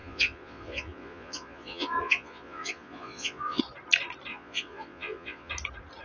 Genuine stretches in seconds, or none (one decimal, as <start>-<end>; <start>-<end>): 3.6-4.3; 5.5-6.0